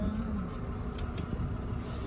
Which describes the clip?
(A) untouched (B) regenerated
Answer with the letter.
A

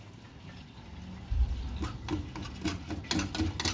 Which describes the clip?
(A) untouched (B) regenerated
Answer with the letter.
A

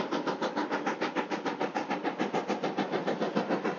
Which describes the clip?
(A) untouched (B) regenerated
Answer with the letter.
A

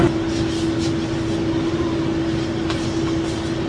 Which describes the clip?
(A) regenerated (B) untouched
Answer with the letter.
B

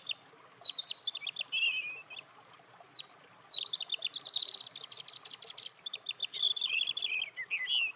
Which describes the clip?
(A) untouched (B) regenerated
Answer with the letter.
A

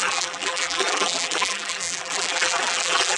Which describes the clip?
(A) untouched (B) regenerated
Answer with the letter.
B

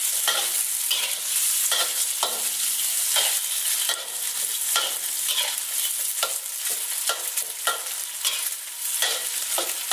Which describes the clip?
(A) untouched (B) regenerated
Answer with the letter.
A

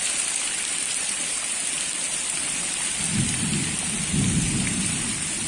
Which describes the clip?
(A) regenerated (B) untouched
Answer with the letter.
A